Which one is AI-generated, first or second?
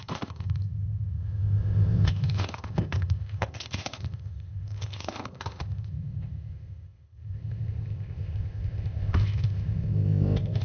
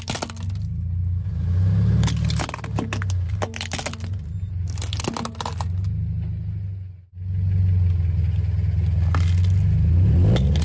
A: first